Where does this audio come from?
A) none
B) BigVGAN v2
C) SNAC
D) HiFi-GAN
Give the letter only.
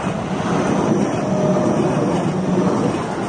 A